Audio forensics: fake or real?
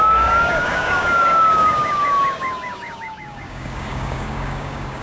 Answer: fake